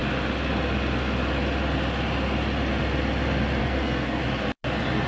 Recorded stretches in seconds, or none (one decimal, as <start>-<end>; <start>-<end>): 0.0-3.6; 4.2-5.1